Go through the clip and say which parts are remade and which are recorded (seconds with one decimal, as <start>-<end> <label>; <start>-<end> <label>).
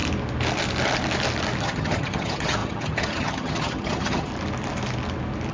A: 0.0-1.6 recorded; 1.6-4.3 remade; 4.3-5.5 recorded